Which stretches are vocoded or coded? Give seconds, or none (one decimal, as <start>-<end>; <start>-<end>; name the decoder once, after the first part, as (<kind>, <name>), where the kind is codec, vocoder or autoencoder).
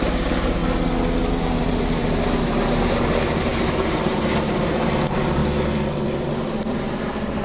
0.0-0.6 (vocoder, BigVGAN v2); 1.3-5.4; 6.3-7.4